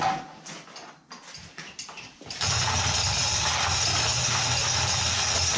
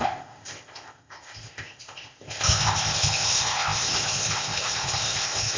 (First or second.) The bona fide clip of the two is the first